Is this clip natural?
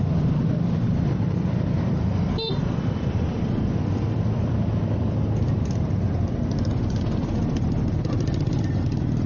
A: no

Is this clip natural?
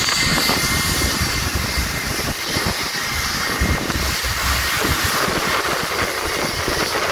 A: yes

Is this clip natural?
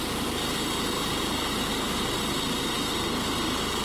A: yes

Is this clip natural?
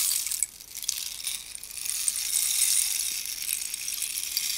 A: yes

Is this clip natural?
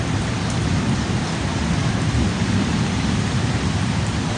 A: no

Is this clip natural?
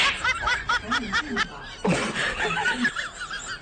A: yes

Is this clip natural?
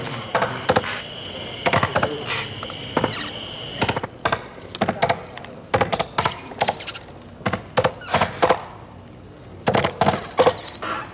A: yes